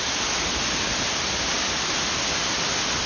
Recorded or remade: recorded